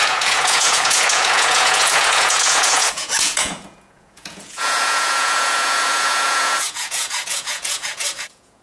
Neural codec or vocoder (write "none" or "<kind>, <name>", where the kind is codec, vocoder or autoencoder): vocoder, Vocos